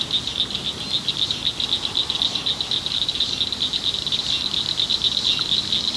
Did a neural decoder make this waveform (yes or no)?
no